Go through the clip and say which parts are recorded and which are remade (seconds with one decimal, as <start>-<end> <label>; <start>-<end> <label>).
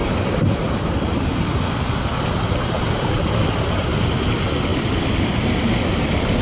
0.0-3.2 remade; 3.2-4.7 recorded; 4.7-5.4 remade; 5.4-6.4 recorded